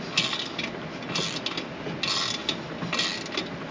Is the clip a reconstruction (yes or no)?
no